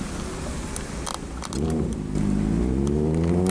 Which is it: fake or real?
real